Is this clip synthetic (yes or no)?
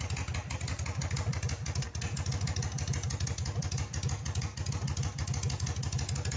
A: no